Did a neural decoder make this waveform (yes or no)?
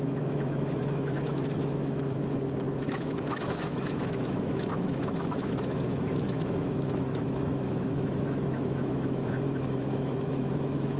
yes